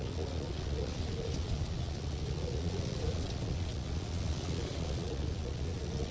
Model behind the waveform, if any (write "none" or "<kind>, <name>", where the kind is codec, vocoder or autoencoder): vocoder, Vocos